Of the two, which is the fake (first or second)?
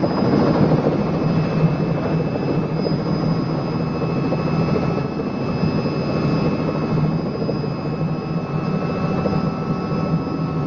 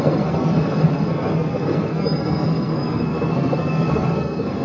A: second